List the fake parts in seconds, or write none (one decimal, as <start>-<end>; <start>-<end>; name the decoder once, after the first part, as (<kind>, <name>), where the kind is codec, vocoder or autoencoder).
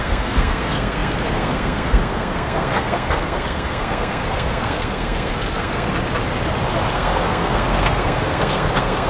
0.0-5.9 (codec, SNAC); 6.9-9.1